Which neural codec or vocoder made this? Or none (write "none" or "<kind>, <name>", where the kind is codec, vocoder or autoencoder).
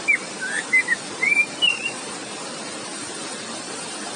none